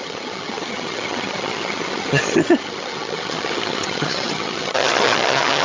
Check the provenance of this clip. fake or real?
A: fake